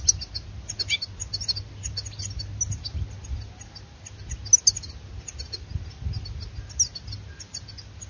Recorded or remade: recorded